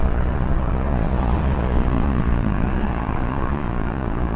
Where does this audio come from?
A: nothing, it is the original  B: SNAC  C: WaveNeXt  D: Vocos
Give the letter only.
D